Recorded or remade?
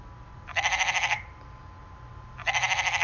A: remade